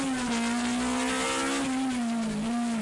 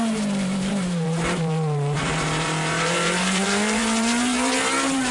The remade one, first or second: second